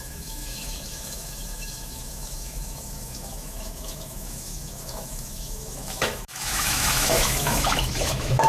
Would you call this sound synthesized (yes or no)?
yes